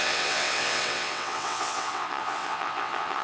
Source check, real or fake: fake